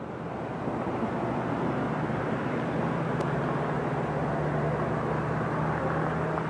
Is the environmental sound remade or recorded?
recorded